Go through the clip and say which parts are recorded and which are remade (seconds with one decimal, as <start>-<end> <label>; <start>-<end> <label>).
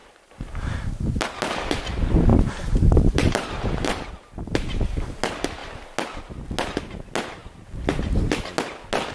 0.0-0.9 remade; 0.9-2.3 recorded; 2.3-4.3 remade; 4.3-9.1 recorded